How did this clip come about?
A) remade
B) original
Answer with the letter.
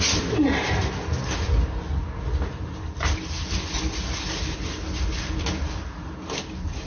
B